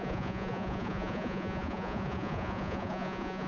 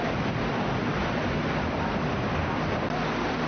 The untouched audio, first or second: second